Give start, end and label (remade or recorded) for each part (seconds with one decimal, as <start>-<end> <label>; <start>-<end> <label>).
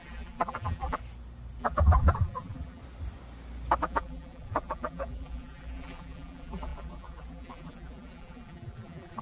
0.0-1.0 remade; 1.0-1.6 recorded; 1.6-2.8 remade; 2.8-3.8 recorded; 3.8-9.2 remade